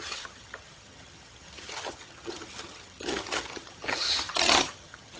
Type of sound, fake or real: fake